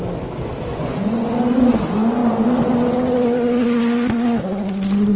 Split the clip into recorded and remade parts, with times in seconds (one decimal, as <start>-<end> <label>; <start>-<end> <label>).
0.0-0.7 recorded; 0.7-1.7 remade; 1.7-5.2 recorded